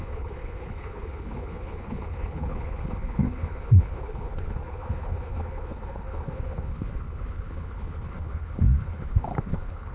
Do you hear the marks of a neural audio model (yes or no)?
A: yes